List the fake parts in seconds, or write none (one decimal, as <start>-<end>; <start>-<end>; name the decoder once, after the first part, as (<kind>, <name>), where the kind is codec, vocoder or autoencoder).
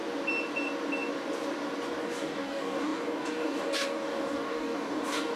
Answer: 2.0-5.4 (codec, DAC)